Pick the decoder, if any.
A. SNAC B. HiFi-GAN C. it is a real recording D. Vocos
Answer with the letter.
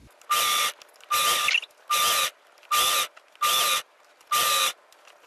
C